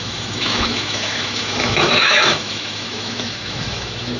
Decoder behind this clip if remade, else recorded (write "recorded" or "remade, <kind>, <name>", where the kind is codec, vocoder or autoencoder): remade, autoencoder, DAC-VAE